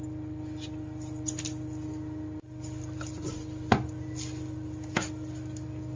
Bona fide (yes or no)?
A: yes